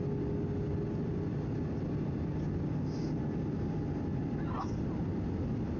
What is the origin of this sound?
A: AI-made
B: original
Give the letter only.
B